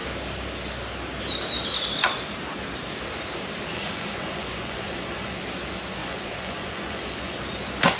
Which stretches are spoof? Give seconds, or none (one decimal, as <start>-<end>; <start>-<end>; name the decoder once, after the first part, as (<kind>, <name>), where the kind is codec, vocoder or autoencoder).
3.7-5.4 (vocoder, Vocos); 6.0-7.4